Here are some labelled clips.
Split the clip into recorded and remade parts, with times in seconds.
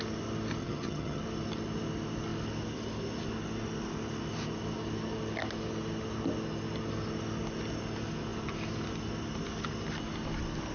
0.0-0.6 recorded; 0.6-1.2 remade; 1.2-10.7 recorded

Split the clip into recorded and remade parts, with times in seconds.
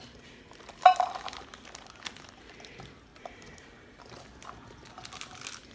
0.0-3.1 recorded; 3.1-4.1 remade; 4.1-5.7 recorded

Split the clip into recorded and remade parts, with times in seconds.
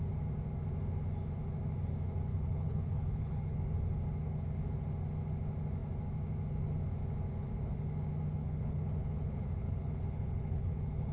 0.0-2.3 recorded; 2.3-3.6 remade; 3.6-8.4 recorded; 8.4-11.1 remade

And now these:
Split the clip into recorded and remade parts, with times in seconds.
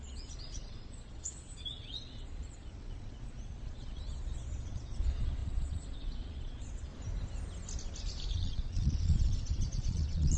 0.0-6.9 remade; 6.9-8.3 recorded; 8.3-10.4 remade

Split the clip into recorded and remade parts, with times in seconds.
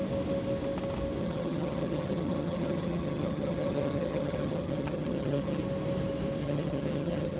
0.0-1.2 recorded; 1.2-5.6 remade; 5.6-6.4 recorded; 6.4-7.4 remade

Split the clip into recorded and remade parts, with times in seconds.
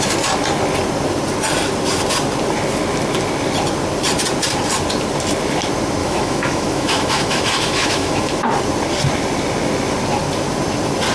0.0-6.0 recorded; 6.0-8.4 remade; 8.4-11.1 recorded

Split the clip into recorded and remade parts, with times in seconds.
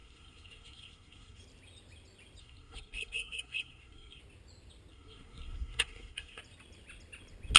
0.0-1.4 remade; 1.4-2.4 recorded; 2.4-4.2 remade; 4.2-4.9 recorded; 4.9-6.4 remade; 6.4-7.6 recorded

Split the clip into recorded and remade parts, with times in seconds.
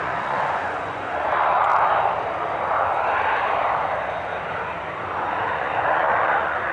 0.0-1.7 remade; 1.7-5.3 recorded; 5.3-6.7 remade